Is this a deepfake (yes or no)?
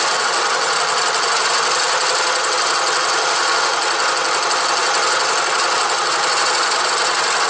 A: no